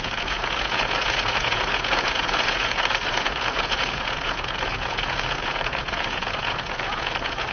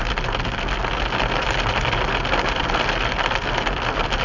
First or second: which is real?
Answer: second